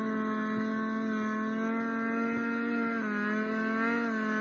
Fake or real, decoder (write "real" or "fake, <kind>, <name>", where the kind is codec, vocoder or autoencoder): real